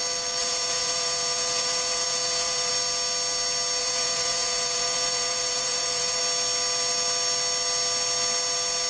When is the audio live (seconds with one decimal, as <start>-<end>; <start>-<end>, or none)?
0.0-0.4; 2.7-3.8; 6.2-8.9